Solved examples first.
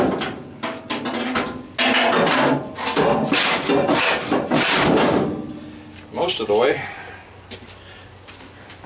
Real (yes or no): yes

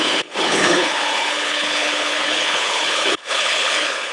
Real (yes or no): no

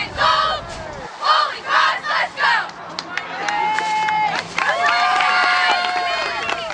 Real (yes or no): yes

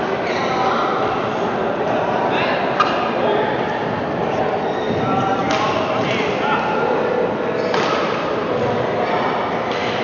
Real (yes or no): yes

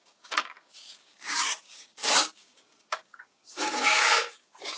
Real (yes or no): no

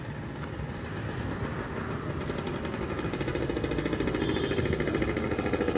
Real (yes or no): yes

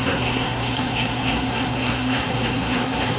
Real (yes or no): no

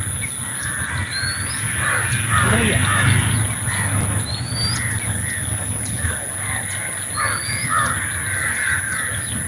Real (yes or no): yes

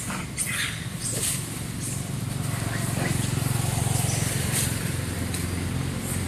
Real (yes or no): no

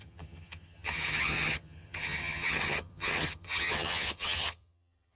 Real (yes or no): no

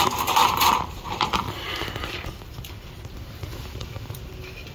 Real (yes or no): yes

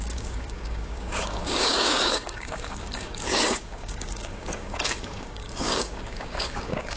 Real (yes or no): no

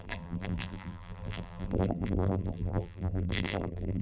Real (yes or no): no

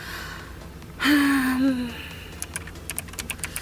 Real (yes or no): yes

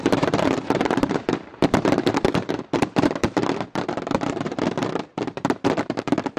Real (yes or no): no